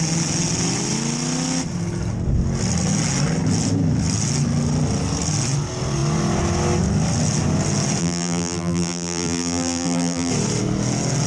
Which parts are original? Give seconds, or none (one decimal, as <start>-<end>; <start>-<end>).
0.0-8.0; 10.3-11.3